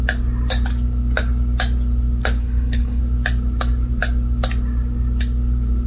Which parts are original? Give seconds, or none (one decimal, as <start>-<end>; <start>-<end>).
0.0-2.4; 3.0-5.9